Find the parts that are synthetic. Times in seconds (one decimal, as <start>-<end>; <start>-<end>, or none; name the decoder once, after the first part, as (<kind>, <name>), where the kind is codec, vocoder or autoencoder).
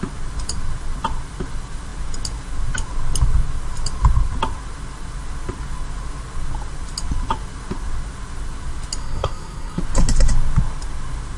9.0-9.8 (codec, SNAC)